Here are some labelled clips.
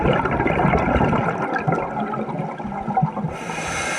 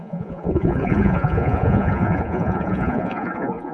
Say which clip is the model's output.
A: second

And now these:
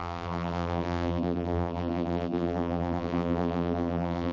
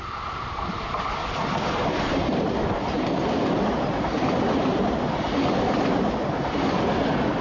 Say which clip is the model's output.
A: first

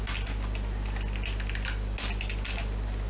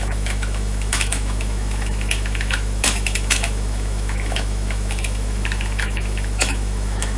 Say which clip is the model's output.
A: second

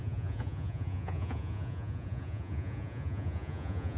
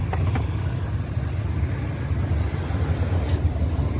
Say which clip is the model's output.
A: first